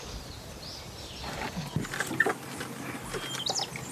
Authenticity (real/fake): real